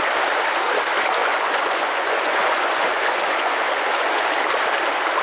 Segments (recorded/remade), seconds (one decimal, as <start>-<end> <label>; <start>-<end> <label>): 0.0-1.2 recorded; 1.2-4.3 remade; 4.3-5.2 recorded

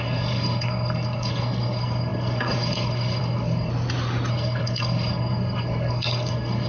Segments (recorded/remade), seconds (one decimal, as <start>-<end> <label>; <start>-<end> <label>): 0.0-3.7 remade; 3.7-4.3 recorded; 4.3-6.7 remade